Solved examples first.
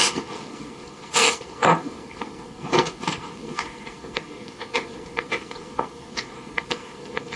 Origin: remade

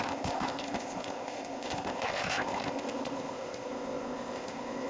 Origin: remade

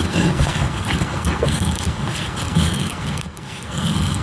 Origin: remade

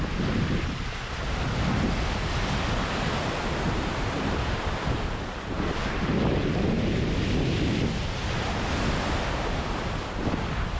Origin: recorded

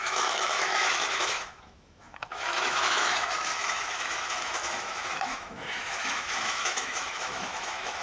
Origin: remade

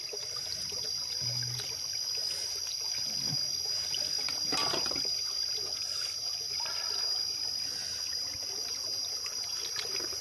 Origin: recorded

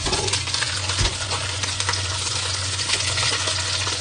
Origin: remade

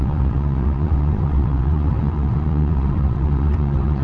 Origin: remade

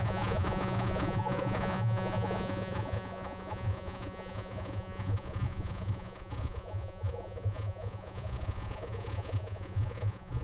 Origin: remade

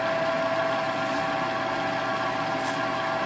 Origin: recorded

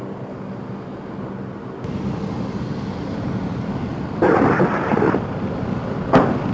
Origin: recorded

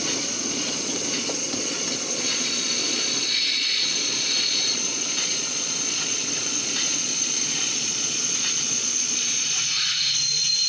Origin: remade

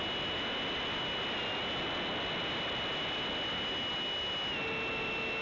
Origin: recorded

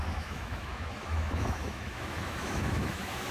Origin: remade